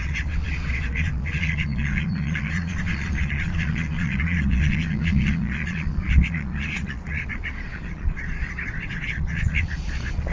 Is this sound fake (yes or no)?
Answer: yes